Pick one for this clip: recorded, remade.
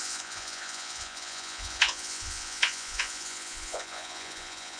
remade